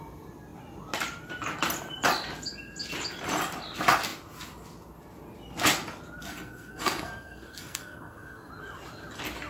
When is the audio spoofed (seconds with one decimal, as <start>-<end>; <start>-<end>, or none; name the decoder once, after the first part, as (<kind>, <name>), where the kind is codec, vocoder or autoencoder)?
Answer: 6.2-8.5 (codec, SNAC)